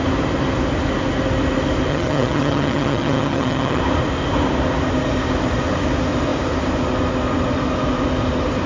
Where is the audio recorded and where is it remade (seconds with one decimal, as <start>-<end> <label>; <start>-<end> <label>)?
0.0-1.9 recorded; 1.9-3.8 remade; 3.8-8.7 recorded